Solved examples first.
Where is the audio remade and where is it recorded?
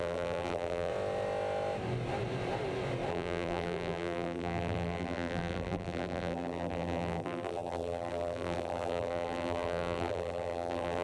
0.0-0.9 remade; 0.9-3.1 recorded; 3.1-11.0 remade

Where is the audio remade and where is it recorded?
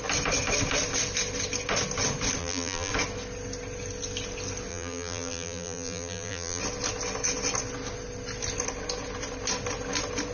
0.0-2.4 recorded; 2.4-2.9 remade; 2.9-4.7 recorded; 4.7-6.6 remade; 6.6-10.3 recorded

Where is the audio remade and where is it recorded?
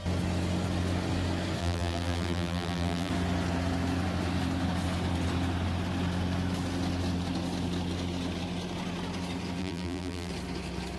0.0-1.6 recorded; 1.6-3.1 remade; 3.1-9.6 recorded; 9.6-10.3 remade; 10.3-11.0 recorded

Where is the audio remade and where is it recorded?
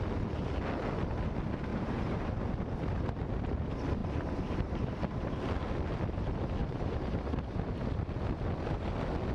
0.0-1.7 recorded; 1.7-2.3 remade; 2.3-4.0 recorded; 4.0-5.4 remade; 5.4-6.6 recorded; 6.6-7.3 remade; 7.3-9.3 recorded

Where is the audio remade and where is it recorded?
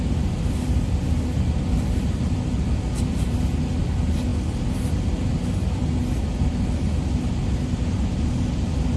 0.0-9.0 recorded